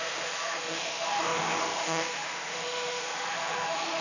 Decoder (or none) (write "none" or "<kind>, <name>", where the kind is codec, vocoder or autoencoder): autoencoder, DAC-VAE